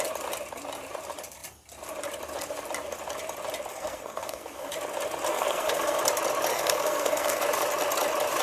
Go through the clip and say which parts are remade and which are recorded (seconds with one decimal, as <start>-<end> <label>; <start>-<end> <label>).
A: 0.0-3.7 recorded; 3.7-4.7 remade; 4.7-5.3 recorded; 5.3-6.0 remade; 6.0-6.5 recorded; 6.5-7.4 remade; 7.4-8.4 recorded